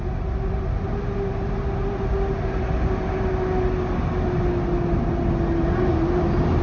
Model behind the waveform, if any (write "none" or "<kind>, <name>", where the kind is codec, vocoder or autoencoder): none